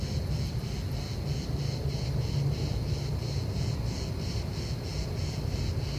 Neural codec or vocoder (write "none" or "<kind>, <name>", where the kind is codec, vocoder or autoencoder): none